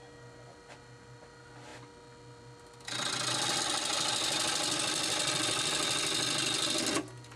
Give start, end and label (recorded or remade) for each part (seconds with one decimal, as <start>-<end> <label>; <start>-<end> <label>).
0.0-7.4 recorded